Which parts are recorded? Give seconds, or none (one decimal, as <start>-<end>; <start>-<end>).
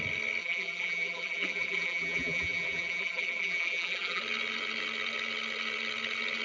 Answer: 0.0-0.4; 4.2-6.4